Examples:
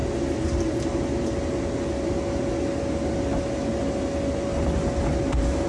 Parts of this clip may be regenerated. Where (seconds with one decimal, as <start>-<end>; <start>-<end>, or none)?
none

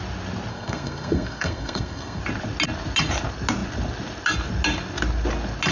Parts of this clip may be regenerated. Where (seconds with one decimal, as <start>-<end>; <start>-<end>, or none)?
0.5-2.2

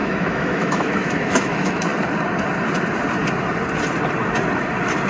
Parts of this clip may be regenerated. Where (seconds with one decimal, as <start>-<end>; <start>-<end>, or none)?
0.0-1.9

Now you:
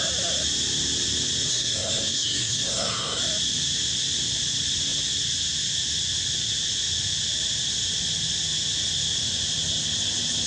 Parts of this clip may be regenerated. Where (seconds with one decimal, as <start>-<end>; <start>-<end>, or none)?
1.5-3.2

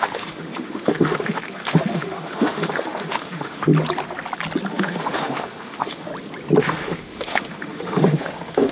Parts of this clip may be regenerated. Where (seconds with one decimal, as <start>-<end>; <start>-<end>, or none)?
0.0-3.7; 4.7-6.1; 6.6-8.7

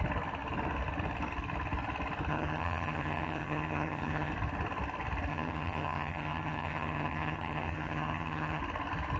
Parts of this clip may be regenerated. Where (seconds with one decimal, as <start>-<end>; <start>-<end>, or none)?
2.3-4.3; 5.3-8.6